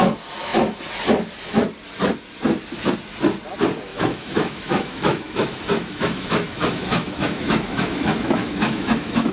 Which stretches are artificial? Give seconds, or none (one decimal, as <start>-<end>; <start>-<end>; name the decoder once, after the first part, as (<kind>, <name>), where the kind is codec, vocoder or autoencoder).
3.9-9.3 (autoencoder, DAC-VAE)